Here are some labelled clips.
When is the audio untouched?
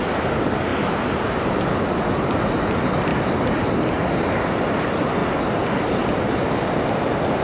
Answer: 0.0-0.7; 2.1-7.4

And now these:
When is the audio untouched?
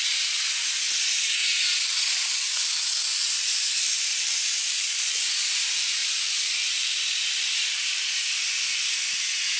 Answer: 0.0-3.1; 5.3-6.0; 7.2-9.6